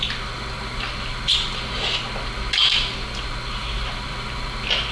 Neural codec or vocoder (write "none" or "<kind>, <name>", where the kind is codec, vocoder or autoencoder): none